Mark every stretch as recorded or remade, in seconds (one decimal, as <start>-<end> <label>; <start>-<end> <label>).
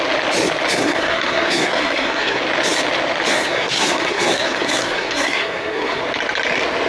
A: 0.0-0.7 recorded; 0.7-2.4 remade; 2.4-3.3 recorded; 3.3-6.0 remade; 6.0-6.9 recorded